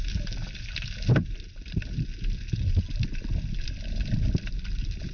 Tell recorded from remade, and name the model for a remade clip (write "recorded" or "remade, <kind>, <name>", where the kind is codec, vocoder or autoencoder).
recorded